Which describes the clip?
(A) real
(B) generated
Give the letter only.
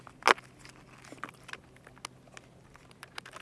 A